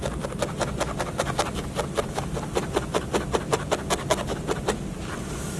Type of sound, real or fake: real